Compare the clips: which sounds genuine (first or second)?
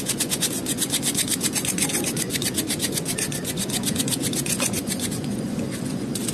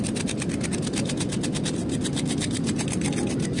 second